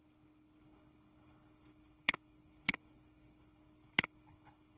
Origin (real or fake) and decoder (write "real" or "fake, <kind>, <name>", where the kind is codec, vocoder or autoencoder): fake, codec, HILCodec